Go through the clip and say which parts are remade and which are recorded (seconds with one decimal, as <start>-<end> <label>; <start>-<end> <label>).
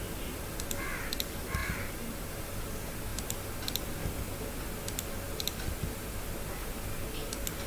0.0-7.7 recorded